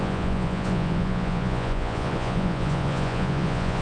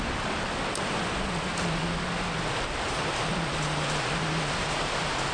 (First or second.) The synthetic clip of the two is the first